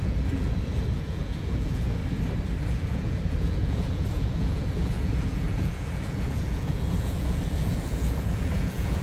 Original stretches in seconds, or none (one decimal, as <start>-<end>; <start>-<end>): 2.0-2.7